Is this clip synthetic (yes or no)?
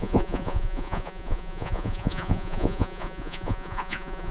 yes